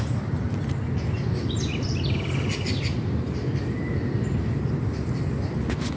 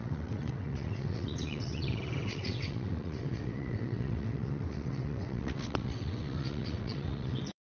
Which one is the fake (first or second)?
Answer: second